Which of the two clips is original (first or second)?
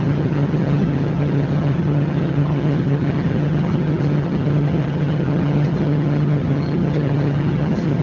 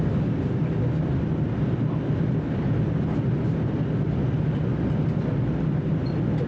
second